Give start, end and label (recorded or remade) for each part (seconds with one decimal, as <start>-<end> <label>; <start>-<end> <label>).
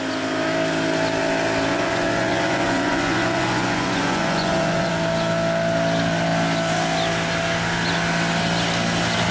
0.0-1.7 recorded; 1.7-4.9 remade; 4.9-9.3 recorded